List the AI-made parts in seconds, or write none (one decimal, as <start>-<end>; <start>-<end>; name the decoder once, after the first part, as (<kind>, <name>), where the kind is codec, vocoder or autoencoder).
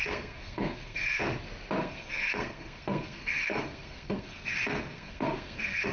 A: 0.0-1.2 (codec, SNAC); 1.8-5.9